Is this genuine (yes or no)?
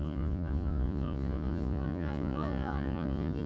no